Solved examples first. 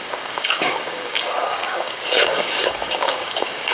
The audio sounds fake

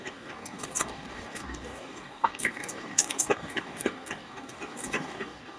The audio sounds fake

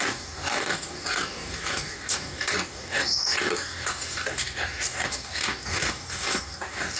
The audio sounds fake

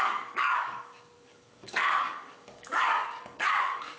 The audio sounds fake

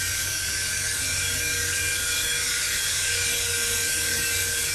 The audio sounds fake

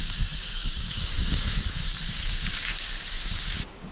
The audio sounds fake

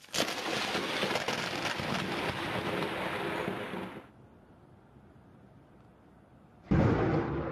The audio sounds real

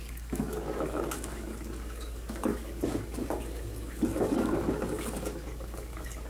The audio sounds fake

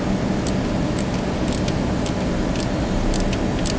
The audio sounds real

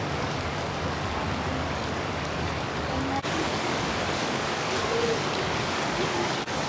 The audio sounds fake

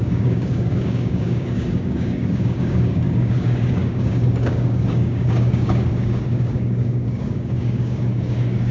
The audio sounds fake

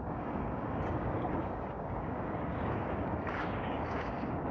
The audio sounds fake